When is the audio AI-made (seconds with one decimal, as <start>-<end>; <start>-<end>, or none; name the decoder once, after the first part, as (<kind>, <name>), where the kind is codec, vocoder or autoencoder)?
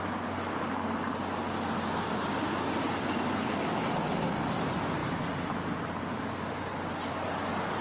none